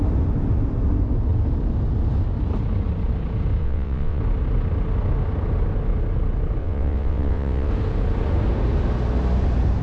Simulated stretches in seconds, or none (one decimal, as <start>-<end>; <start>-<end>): 3.6-4.2; 6.6-7.7